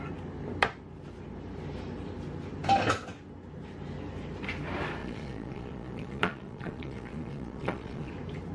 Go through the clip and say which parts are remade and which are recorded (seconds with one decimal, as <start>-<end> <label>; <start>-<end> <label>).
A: 0.0-5.0 recorded; 5.0-8.1 remade; 8.1-8.5 recorded